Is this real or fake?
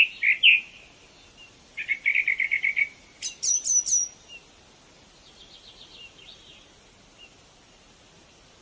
real